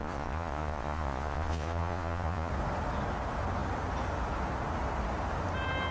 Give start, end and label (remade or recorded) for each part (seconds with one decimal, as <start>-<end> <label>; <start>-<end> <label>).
0.0-2.5 remade; 2.5-5.9 recorded